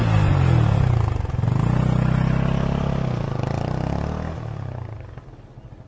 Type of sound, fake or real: real